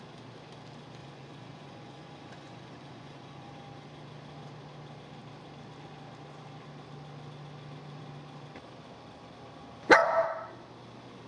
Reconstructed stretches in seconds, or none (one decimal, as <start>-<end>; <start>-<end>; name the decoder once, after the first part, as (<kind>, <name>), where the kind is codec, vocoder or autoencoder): 1.0-3.5 (vocoder, Vocos)